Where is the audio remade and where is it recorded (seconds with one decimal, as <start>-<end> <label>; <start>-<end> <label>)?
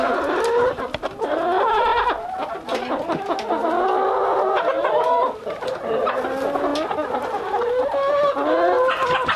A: 0.0-9.4 recorded